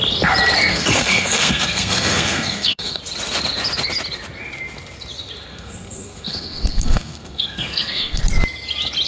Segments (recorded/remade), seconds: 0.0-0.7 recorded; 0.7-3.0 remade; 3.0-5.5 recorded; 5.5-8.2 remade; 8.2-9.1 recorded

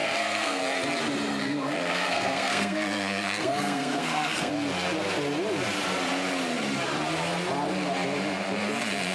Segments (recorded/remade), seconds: 0.0-0.6 remade; 0.6-1.4 recorded; 1.4-4.5 remade; 4.5-9.1 recorded

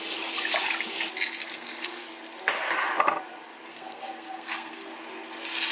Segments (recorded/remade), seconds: 0.0-1.4 recorded; 1.4-2.0 remade; 2.0-3.7 recorded; 3.7-4.9 remade; 4.9-5.7 recorded

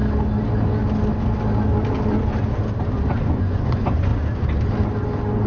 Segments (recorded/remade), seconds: 0.0-3.3 recorded; 3.3-4.1 remade; 4.1-5.5 recorded

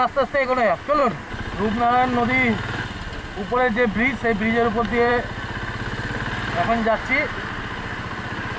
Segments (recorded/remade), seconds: 0.0-8.6 recorded

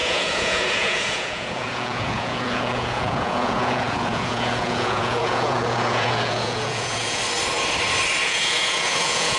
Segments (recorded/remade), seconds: 0.0-7.2 remade; 7.2-8.2 recorded; 8.2-9.4 remade